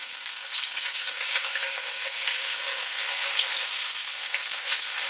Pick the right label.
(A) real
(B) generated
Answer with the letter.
B